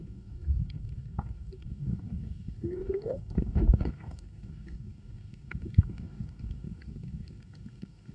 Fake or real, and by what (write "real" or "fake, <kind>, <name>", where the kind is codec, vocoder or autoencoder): fake, codec, DAC